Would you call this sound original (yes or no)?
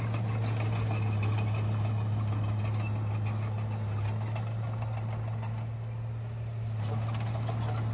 yes